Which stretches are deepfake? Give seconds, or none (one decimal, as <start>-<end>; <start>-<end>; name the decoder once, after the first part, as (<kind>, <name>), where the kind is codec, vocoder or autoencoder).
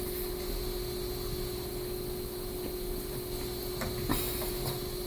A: none